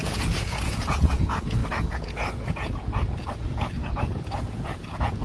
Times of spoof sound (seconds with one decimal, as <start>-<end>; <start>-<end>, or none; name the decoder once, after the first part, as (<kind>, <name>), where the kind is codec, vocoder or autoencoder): 0.0-5.2 (vocoder, Vocos)